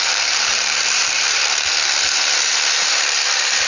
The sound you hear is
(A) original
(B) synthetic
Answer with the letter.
B